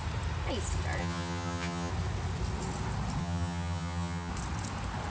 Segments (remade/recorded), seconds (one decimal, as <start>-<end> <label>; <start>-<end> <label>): 0.0-1.0 recorded; 1.0-1.9 remade; 1.9-3.2 recorded; 3.2-4.3 remade; 4.3-5.1 recorded

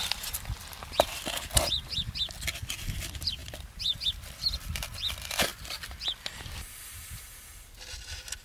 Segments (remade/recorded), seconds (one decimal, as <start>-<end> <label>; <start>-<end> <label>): 0.0-5.5 recorded; 5.5-7.2 remade; 7.2-8.4 recorded

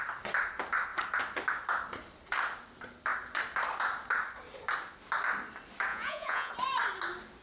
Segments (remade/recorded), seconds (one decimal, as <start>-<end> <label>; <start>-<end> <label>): 0.0-5.9 recorded; 5.9-6.5 remade; 6.5-7.4 recorded

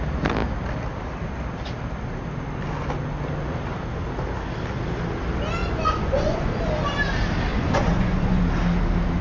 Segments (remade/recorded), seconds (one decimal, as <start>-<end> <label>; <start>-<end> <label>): 0.0-5.6 recorded; 5.6-6.5 remade; 6.5-7.5 recorded; 7.5-8.4 remade; 8.4-9.2 recorded